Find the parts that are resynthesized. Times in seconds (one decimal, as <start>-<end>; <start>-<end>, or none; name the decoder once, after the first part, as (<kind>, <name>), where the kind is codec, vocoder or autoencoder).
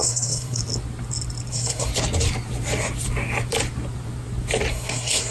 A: 0.0-0.6 (codec, SNAC); 1.5-1.9; 4.7-5.3